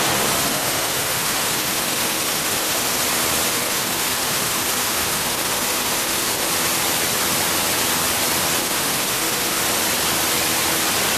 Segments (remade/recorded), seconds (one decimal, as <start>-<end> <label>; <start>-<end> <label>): 0.0-0.5 recorded; 0.5-3.0 remade; 3.0-3.5 recorded; 3.5-6.5 remade; 6.5-8.6 recorded; 8.6-9.6 remade; 9.6-11.2 recorded